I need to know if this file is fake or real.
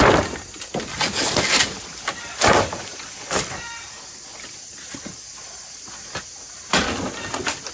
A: real